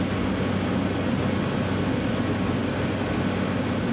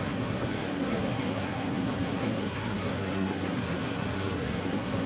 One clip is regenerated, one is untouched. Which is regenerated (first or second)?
second